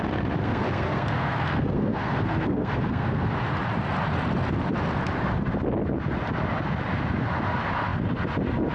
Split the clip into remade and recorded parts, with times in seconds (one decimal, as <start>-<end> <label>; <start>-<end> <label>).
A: 0.0-0.4 recorded; 0.4-3.3 remade; 3.3-8.7 recorded